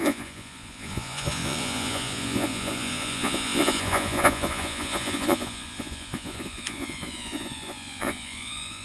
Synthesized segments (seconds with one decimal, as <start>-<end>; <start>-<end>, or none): 0.0-8.8